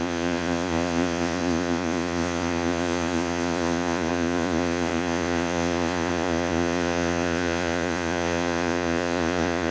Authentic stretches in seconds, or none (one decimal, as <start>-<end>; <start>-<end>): none